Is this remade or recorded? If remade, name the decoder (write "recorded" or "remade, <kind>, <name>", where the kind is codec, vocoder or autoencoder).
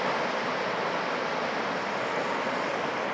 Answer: recorded